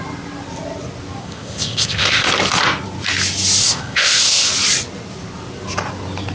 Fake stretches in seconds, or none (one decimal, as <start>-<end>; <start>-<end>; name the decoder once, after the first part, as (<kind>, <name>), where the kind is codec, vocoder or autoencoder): 1.2-2.3 (codec, ZipCodec); 3.6-4.5